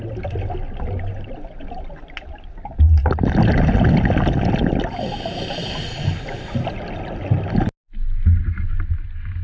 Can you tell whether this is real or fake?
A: real